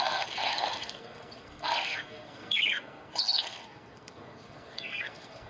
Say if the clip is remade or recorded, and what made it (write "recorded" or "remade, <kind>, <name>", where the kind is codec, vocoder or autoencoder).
remade, codec, SNAC